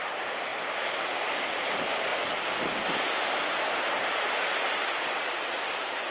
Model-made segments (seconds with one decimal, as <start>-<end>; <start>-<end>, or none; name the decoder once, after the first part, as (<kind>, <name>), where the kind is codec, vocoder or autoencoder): 0.0-0.5 (vocoder, BigVGAN v2); 1.5-2.1; 3.9-4.5; 5.4-6.1